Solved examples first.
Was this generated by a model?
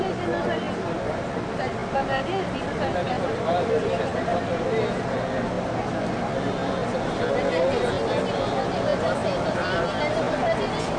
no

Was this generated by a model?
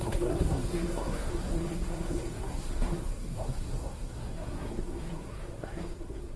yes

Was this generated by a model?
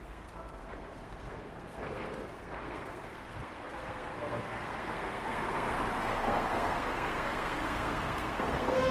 yes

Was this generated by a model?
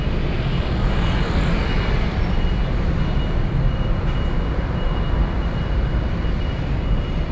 no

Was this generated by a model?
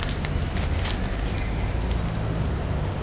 no